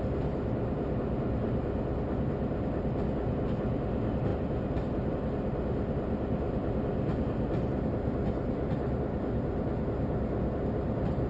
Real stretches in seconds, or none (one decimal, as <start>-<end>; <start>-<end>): 0.0-11.3